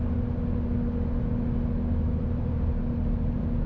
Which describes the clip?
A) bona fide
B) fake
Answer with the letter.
A